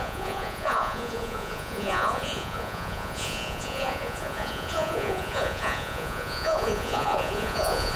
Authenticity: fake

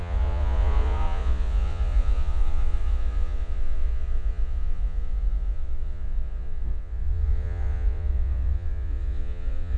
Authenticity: fake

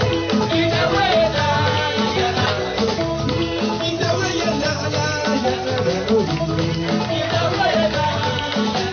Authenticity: real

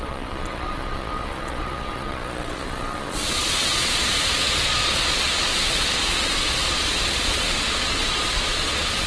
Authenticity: fake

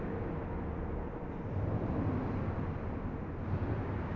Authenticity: real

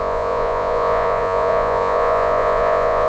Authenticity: fake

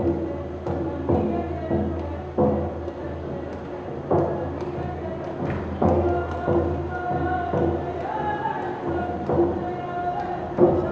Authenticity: real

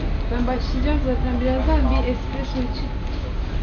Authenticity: real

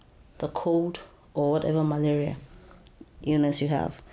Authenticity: real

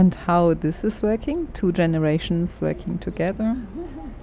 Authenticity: real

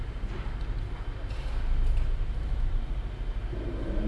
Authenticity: real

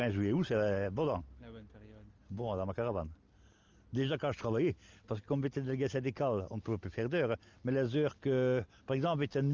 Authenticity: real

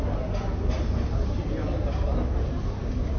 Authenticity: real